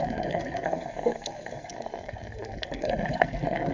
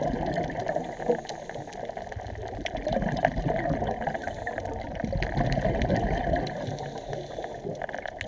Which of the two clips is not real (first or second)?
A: first